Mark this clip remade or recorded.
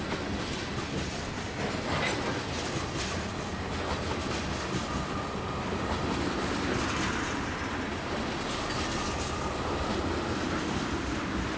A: recorded